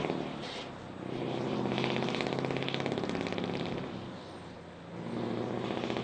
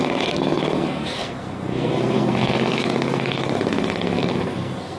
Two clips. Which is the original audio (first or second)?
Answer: first